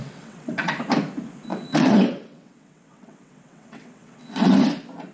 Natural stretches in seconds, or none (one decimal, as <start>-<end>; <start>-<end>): 0.7-1.5; 4.6-5.1